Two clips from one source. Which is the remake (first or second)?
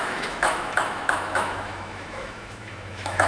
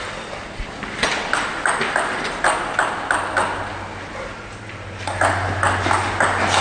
first